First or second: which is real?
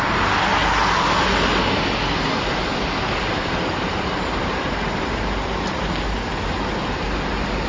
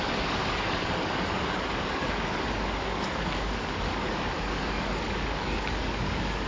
first